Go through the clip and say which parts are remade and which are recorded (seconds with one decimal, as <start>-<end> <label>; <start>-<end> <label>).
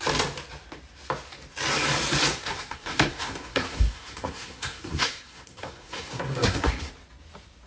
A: 0.0-2.3 recorded; 2.3-6.9 remade; 6.9-7.7 recorded